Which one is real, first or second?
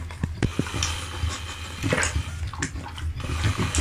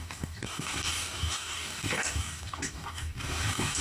first